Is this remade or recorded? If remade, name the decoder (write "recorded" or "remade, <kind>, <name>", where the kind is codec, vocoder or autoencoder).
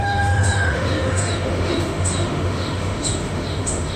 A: remade, autoencoder, DAC-VAE